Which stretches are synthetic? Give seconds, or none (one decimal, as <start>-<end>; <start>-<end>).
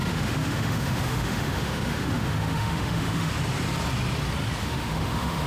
0.0-3.3; 4.6-5.5